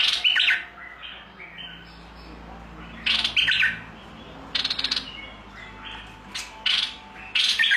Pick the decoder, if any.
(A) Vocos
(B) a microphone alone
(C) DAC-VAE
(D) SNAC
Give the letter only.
B